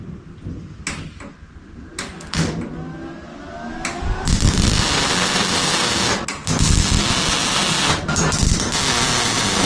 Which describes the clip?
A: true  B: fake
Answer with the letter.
A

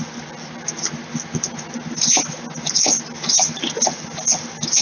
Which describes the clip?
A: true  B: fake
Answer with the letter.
A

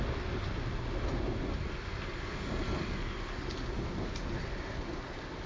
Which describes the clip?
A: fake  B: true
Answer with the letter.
B